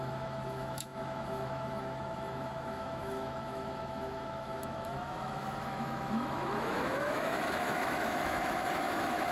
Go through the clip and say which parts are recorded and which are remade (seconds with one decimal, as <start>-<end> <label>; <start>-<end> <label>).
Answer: 0.0-9.3 remade